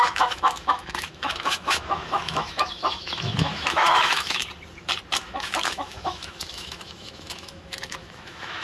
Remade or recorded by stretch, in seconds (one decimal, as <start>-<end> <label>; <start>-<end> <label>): 0.0-4.4 remade; 4.4-5.2 recorded; 5.2-8.6 remade